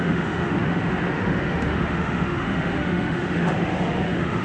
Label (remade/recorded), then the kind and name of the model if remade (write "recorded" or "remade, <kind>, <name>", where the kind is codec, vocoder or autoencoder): remade, autoencoder, DAC-VAE